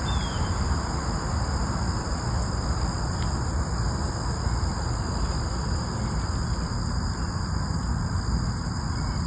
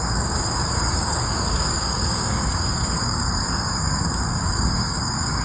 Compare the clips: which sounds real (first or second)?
first